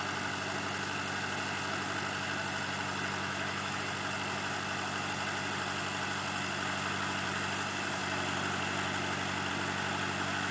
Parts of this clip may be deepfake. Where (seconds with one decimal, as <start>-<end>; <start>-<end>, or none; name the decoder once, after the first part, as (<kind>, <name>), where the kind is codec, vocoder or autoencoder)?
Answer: 3.2-3.8 (autoencoder, DAC-VAE)